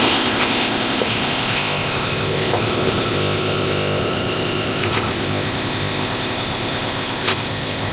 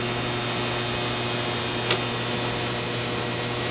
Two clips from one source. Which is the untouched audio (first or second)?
second